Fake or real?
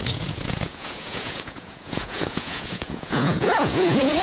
fake